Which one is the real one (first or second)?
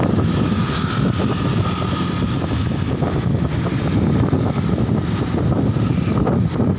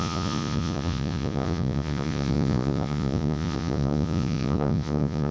first